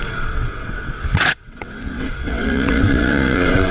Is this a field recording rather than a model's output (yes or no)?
no